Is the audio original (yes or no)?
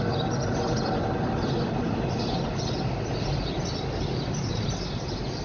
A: yes